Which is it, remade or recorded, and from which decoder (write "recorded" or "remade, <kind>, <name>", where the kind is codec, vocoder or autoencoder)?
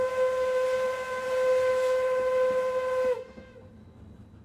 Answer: recorded